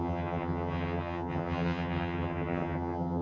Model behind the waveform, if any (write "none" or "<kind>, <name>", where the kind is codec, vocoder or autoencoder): vocoder, HiFi-GAN